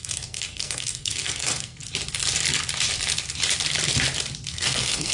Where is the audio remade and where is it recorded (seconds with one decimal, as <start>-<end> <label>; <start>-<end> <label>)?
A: 0.0-1.8 remade; 1.8-4.5 recorded; 4.5-5.1 remade